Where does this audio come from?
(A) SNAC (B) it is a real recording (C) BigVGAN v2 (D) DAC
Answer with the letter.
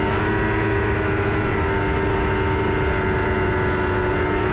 B